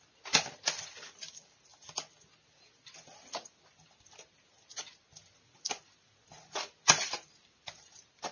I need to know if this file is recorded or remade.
recorded